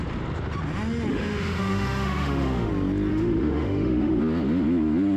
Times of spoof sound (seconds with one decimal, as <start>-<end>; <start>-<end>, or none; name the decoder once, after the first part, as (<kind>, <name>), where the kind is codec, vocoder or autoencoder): 1.1-2.7 (autoencoder, DAC-VAE); 3.1-4.2